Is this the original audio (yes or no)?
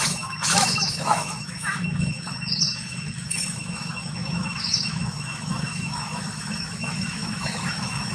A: no